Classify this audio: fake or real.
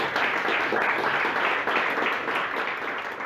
real